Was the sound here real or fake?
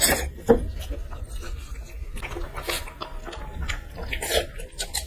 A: real